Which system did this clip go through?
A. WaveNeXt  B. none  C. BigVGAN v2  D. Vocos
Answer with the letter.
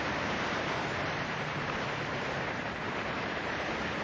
C